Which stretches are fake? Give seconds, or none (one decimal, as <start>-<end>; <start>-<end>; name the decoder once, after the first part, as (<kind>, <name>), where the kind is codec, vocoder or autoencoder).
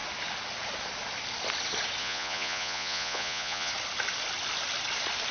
2.0-3.7 (vocoder, Vocos)